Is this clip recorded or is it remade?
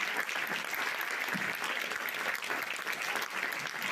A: recorded